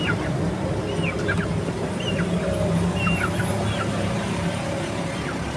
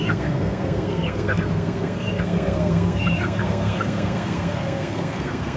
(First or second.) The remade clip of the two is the second